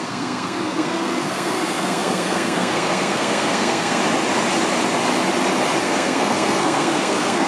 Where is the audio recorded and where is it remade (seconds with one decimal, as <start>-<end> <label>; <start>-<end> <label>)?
0.0-4.0 remade; 4.0-5.8 recorded; 5.8-7.5 remade